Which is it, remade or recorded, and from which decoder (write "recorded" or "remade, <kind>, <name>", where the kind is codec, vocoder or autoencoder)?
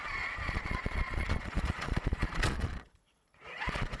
remade, vocoder, Vocos